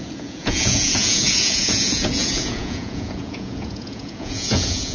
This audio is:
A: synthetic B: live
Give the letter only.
A